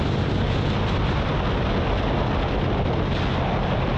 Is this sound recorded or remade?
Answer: recorded